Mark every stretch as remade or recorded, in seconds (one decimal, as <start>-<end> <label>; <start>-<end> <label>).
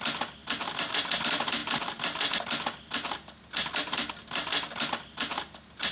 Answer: 0.0-5.9 recorded